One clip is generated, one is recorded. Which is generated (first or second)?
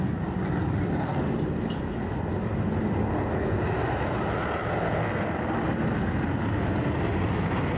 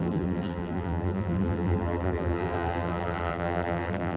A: second